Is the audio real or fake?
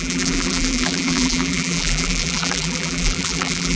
fake